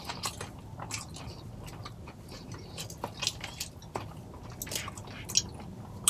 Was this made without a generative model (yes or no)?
yes